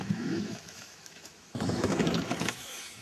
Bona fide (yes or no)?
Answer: no